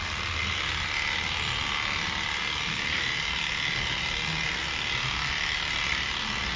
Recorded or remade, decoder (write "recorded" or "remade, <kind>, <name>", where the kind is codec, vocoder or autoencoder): recorded